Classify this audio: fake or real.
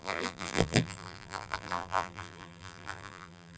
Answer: fake